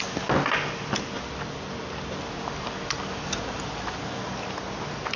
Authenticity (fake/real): real